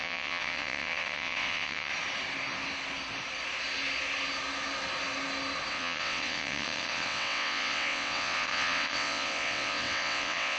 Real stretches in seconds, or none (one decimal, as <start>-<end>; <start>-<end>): 1.9-5.7